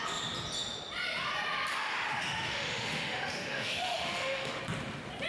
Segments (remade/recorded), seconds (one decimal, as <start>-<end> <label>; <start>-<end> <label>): 0.0-1.7 recorded; 1.7-4.6 remade; 4.6-5.3 recorded